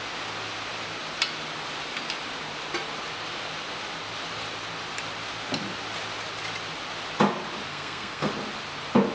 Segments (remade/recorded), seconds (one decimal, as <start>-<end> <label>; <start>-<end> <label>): 0.0-7.7 recorded; 7.7-8.3 remade; 8.3-9.1 recorded